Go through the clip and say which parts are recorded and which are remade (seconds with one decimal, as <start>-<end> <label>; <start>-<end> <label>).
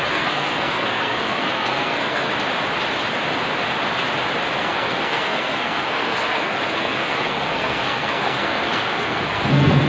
0.0-2.3 remade; 2.3-4.6 recorded; 4.6-9.9 remade